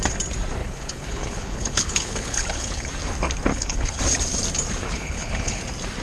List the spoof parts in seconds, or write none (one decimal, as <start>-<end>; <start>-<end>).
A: 0.6-2.9; 3.5-4.0; 4.8-5.6